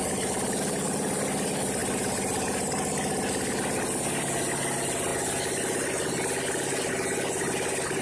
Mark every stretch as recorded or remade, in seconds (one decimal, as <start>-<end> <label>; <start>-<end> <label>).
0.0-8.0 recorded